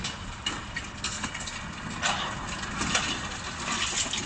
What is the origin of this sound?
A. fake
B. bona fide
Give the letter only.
B